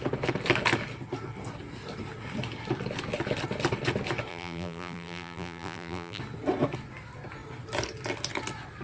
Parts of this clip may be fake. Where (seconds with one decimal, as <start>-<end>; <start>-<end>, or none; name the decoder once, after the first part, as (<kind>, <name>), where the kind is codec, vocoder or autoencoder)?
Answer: 4.3-6.2 (vocoder, BigVGAN v2)

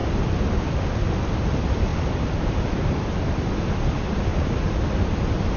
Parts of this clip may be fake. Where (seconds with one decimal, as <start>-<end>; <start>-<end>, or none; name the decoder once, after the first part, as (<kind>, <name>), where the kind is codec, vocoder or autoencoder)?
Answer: 1.4-4.3 (vocoder, BigVGAN v2)